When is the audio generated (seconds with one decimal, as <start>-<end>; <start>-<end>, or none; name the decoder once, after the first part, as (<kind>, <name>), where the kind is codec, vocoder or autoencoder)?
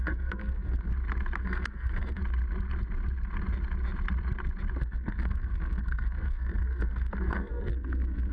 0.0-0.9 (codec, SNAC); 1.4-2.2; 4.8-8.3